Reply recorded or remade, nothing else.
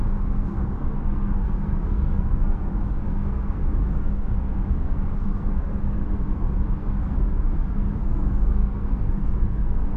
remade